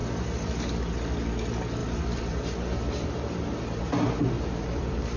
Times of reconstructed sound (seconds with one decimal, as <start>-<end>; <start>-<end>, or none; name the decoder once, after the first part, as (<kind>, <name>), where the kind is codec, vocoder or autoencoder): 0.0-0.7 (vocoder, BigVGAN v2); 1.8-5.2